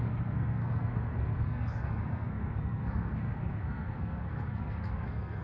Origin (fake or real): fake